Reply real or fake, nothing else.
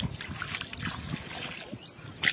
real